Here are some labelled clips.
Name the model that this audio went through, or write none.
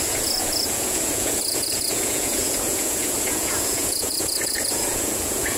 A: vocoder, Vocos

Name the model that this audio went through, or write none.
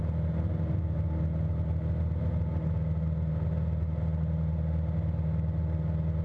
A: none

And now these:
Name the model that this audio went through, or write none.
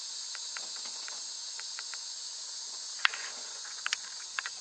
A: vocoder, Vocos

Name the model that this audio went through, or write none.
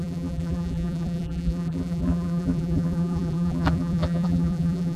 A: vocoder, BigVGAN v2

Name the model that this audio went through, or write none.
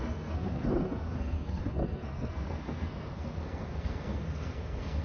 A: codec, SNAC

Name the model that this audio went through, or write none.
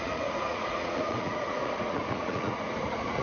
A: vocoder, Vocos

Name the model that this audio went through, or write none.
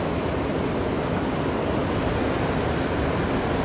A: none